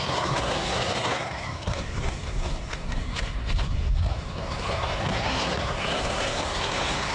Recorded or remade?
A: remade